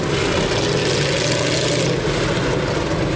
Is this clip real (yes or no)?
yes